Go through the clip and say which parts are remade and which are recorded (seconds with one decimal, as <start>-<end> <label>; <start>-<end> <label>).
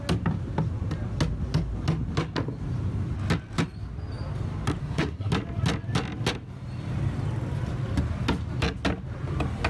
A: 0.0-4.8 recorded; 4.8-5.3 remade; 5.3-9.7 recorded